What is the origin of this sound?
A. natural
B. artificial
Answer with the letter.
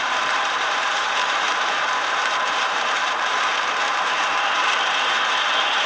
B